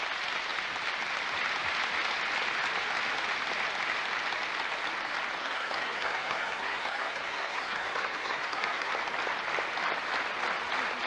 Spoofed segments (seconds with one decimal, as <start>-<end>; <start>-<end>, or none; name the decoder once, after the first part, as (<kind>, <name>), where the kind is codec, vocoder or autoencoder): 5.4-8.9 (codec, SNAC)